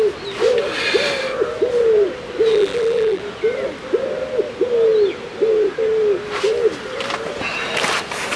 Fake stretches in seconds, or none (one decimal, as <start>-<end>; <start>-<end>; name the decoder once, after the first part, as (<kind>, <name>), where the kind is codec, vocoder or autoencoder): 2.5-3.2 (vocoder, BigVGAN v2)